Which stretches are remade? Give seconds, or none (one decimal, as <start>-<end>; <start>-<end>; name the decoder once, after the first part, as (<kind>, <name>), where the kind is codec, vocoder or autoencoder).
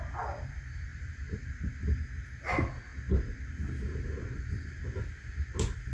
0.9-1.6 (vocoder, BigVGAN v2)